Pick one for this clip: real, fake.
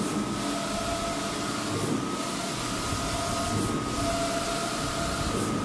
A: real